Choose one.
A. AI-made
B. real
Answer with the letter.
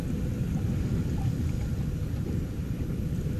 B